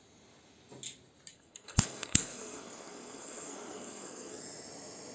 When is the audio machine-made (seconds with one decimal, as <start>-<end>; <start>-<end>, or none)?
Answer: 1.3-4.4